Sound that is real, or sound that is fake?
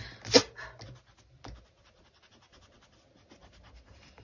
real